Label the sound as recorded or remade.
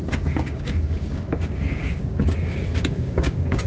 remade